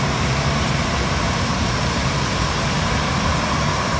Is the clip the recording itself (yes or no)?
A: no